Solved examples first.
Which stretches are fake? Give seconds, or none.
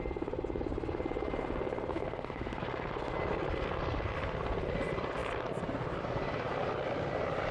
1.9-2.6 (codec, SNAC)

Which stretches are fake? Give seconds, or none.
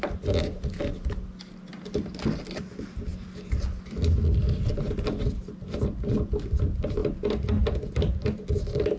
none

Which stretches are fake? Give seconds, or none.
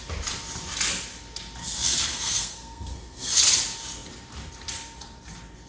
1.6-3.4 (codec, SNAC)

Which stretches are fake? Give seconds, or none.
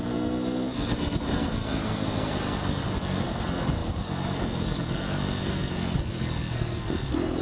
0.0-7.4 (codec, SNAC)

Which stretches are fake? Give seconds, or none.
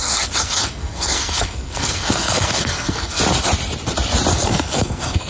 0.0-3.2 (codec, SNAC); 4.3-5.3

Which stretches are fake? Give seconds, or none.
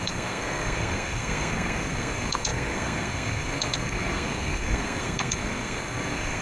0.0-6.4 (codec, SNAC)